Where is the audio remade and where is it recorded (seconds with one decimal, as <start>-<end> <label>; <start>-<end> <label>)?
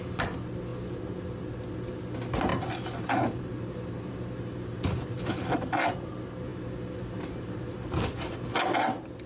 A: 0.0-2.5 recorded; 2.5-5.9 remade; 5.9-6.5 recorded; 6.5-8.3 remade; 8.3-9.3 recorded